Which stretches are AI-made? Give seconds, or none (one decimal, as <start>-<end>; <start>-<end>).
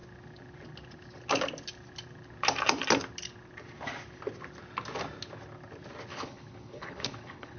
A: 6.1-7.6